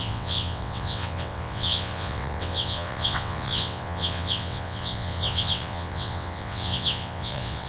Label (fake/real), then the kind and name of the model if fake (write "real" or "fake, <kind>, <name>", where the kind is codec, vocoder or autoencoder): fake, vocoder, WaveNeXt